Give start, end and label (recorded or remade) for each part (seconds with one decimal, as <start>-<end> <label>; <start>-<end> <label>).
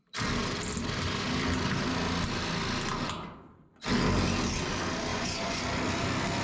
0.0-5.1 recorded; 5.1-5.6 remade; 5.6-6.4 recorded